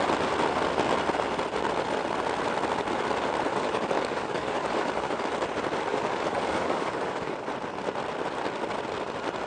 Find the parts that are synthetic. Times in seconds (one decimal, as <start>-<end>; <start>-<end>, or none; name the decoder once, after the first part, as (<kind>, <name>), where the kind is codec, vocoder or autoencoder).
3.5-5.3 (codec, DAC); 5.9-7.5